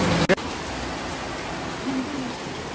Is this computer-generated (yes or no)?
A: no